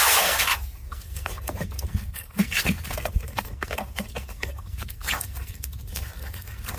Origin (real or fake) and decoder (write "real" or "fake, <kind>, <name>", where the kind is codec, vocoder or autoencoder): fake, codec, SNAC